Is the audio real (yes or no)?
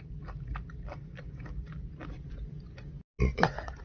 yes